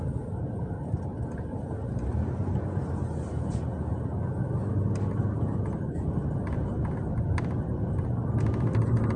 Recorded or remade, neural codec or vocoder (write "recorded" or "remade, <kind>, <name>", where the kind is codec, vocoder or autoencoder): recorded